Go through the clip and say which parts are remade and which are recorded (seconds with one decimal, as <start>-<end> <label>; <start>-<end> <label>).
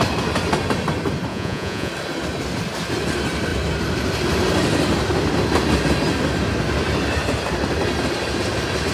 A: 0.0-1.3 recorded; 1.3-1.9 remade; 1.9-8.9 recorded